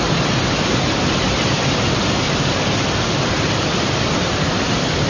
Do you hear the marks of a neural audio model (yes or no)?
no